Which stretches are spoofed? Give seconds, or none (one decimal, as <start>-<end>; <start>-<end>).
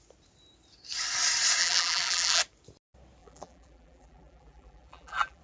1.6-2.4; 3.2-5.4